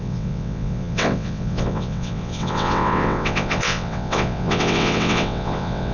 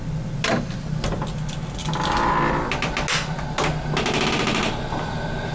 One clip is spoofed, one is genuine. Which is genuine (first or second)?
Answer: second